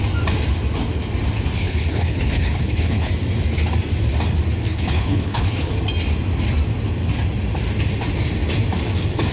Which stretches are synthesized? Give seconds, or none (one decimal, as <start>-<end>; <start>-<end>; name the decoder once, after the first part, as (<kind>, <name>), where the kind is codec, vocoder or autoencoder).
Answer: 1.6-3.1 (codec, HILCodec); 4.7-5.7